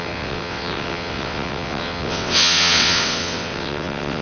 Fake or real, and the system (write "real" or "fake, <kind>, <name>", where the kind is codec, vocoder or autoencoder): fake, vocoder, WaveNeXt